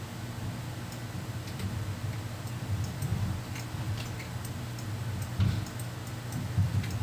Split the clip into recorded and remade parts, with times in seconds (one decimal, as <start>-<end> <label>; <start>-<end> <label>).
0.0-7.0 recorded